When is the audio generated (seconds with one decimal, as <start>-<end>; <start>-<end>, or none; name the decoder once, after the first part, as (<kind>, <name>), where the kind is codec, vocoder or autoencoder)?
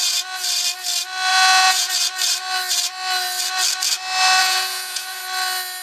1.3-1.9 (vocoder, Vocos); 4.4-5.2